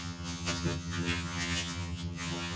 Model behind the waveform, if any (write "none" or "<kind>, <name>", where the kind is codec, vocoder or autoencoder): vocoder, HiFi-GAN